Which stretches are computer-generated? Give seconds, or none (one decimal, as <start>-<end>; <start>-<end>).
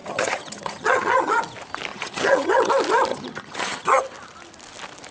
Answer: 0.0-1.4; 1.9-2.7; 3.1-4.0